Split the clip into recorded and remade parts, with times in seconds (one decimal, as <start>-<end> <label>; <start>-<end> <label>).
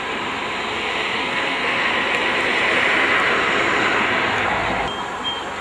0.0-1.2 recorded; 1.2-1.9 remade; 1.9-5.6 recorded